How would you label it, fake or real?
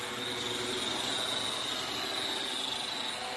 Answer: real